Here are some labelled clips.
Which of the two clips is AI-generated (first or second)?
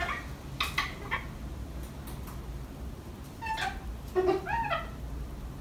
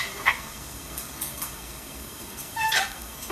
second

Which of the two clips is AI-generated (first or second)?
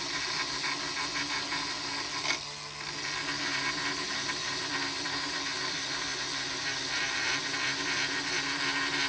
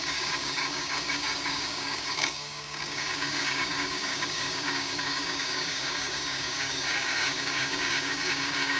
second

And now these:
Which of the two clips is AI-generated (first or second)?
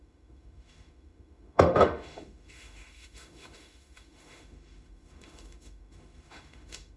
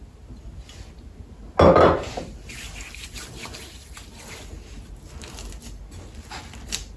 first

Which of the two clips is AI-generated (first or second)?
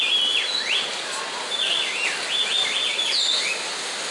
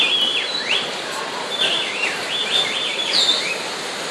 second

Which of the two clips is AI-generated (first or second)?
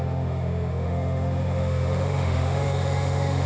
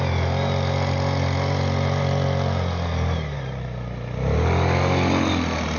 first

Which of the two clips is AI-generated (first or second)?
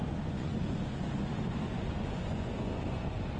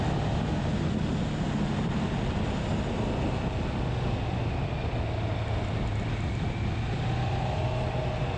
first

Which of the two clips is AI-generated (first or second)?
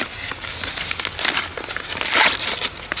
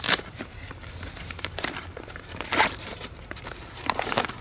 second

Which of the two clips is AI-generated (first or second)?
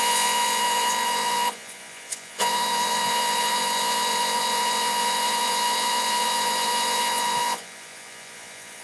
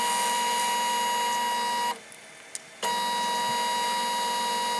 first